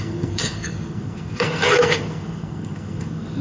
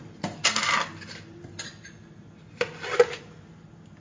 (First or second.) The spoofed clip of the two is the first